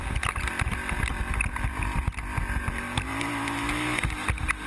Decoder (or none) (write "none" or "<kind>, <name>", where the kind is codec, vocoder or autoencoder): none